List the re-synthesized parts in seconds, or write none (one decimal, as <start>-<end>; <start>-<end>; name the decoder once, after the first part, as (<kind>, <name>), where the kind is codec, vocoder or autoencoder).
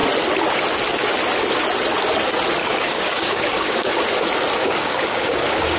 2.6-4.0 (codec, DAC); 4.6-5.8